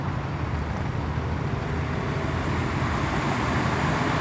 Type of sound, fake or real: real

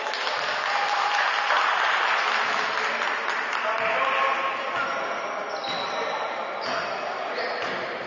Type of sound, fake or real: real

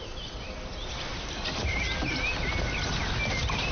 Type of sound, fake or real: real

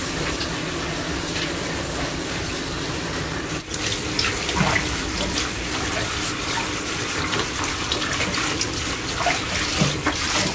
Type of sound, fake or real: real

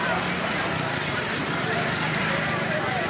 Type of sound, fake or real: real